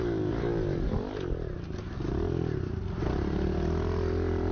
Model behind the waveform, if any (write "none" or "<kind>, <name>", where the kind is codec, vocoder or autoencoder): none